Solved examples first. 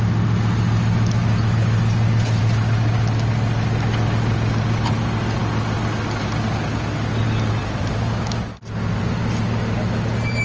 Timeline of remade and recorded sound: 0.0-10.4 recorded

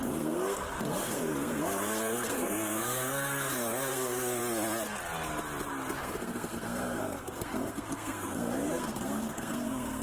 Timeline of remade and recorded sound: 0.0-4.4 remade; 4.4-6.0 recorded; 6.0-10.0 remade

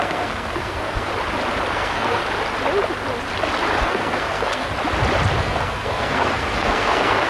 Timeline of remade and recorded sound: 0.0-1.1 remade; 1.1-1.7 recorded; 1.7-2.2 remade; 2.2-3.8 recorded; 3.8-4.7 remade; 4.7-5.4 recorded; 5.4-7.3 remade